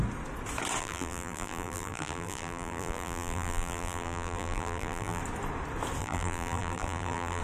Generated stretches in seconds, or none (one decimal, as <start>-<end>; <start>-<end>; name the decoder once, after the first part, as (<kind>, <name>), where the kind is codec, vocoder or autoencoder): 0.8-5.2 (vocoder, BigVGAN v2); 6.0-7.4